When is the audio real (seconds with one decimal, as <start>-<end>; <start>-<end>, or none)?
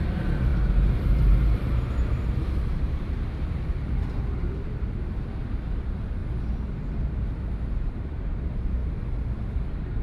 6.2-6.8; 8.8-9.5